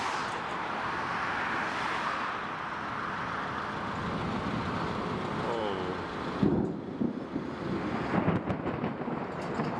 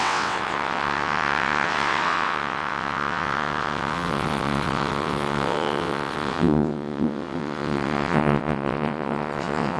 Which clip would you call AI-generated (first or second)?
second